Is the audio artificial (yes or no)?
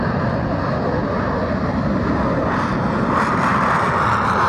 no